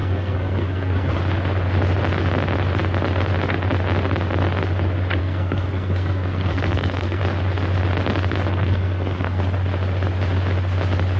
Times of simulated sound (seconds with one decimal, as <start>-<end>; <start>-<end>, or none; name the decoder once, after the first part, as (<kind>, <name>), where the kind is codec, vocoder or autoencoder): 0.0-1.2 (codec, SNAC); 5.2-7.2; 8.5-9.4